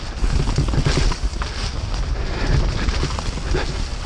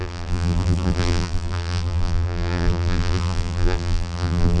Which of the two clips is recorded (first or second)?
first